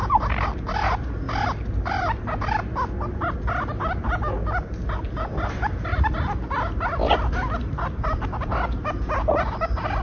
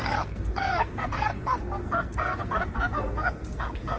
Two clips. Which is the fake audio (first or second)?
second